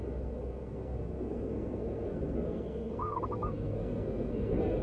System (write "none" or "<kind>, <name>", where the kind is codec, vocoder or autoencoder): codec, SNAC